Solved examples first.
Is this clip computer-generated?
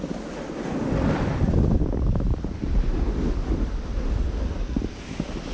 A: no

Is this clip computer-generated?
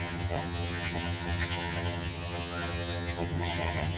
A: yes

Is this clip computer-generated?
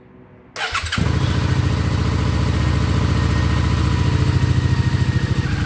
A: no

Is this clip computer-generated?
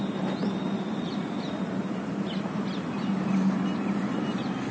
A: no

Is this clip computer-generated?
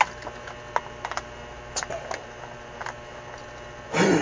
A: no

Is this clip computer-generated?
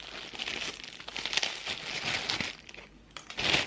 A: no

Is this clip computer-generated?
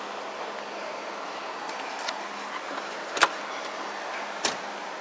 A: no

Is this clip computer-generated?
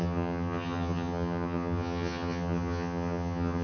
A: yes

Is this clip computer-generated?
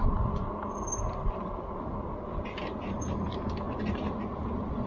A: no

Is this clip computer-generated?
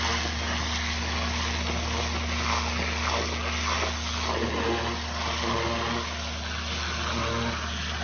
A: no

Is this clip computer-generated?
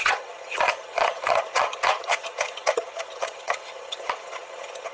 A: yes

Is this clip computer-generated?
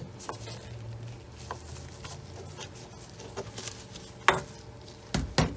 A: no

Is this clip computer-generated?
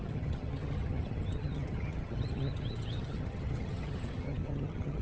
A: yes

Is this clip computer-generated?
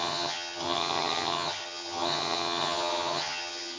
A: yes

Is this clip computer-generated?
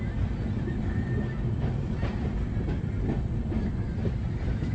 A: no